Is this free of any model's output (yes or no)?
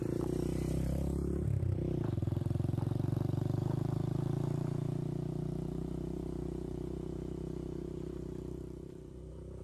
no